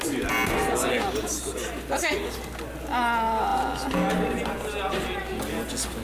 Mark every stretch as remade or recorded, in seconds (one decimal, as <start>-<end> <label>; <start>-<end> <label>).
0.0-6.0 recorded